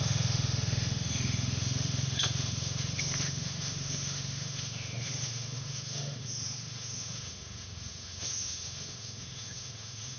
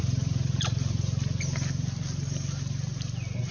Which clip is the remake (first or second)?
first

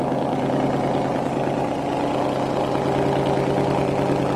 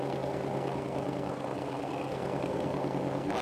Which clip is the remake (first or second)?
second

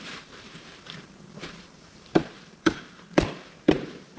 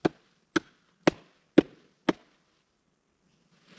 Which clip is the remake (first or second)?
first